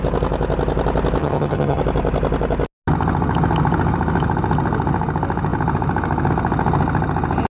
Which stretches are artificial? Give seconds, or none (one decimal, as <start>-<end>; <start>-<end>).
1.2-1.8